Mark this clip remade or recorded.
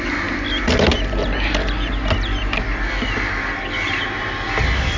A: recorded